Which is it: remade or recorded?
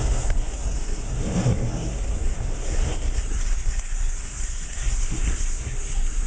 remade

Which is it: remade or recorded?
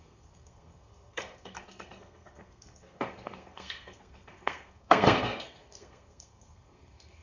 remade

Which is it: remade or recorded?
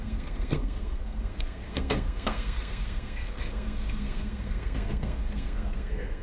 remade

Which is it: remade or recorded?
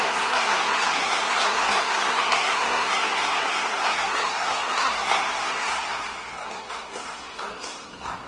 remade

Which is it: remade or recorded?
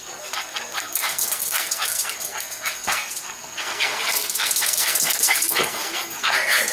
remade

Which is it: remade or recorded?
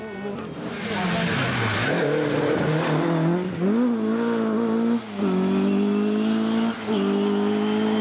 recorded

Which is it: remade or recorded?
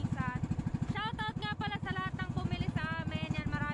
recorded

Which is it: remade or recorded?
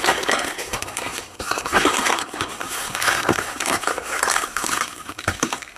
remade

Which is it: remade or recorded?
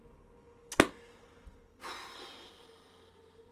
recorded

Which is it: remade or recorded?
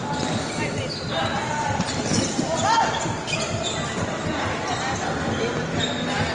recorded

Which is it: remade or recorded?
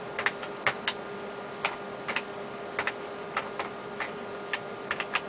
recorded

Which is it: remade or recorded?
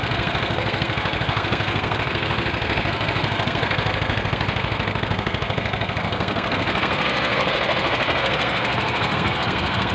remade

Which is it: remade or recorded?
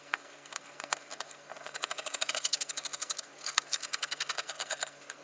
remade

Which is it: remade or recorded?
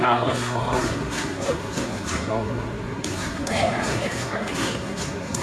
remade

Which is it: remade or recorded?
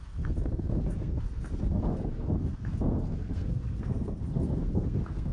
remade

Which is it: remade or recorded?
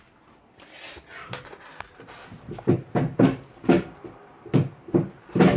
recorded